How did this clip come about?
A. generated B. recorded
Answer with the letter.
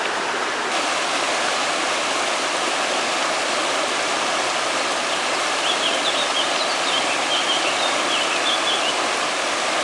B